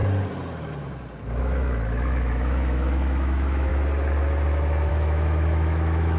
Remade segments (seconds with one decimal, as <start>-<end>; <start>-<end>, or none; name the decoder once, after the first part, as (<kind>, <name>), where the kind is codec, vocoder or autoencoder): 1.4-3.7 (autoencoder, DAC-VAE); 4.9-6.2